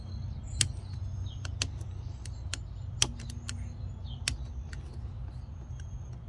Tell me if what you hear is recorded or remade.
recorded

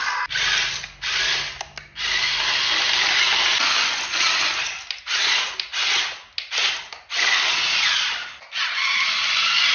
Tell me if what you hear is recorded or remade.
recorded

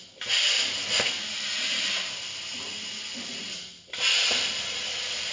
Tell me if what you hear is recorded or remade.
recorded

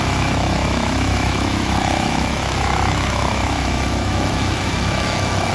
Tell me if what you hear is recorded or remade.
remade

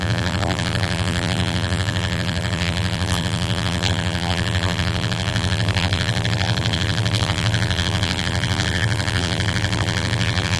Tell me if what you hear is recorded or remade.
remade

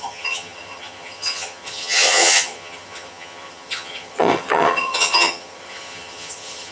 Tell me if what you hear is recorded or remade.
remade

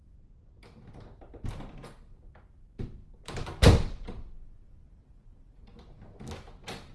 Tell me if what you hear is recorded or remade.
recorded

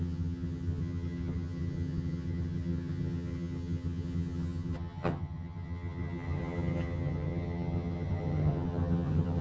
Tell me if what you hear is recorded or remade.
remade